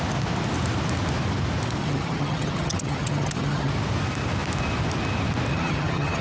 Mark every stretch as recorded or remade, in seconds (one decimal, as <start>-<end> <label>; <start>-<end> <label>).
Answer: 0.0-1.8 recorded; 1.8-3.7 remade; 3.7-5.5 recorded; 5.5-6.2 remade